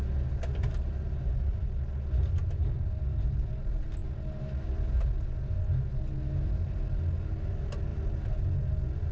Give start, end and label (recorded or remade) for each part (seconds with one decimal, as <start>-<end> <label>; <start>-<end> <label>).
0.0-9.1 recorded